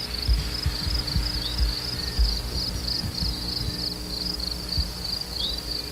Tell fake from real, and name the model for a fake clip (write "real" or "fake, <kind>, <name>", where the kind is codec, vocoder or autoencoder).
real